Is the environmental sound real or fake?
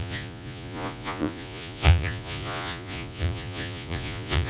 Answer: fake